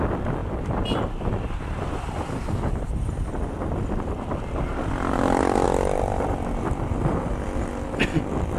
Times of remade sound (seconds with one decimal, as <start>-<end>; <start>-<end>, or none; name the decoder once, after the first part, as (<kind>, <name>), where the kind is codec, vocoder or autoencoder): none